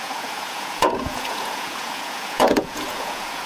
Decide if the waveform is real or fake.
fake